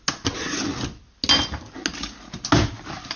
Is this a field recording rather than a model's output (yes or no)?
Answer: yes